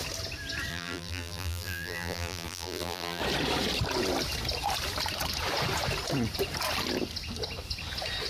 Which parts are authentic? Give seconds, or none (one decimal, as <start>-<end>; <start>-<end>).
0.0-0.7; 3.2-8.3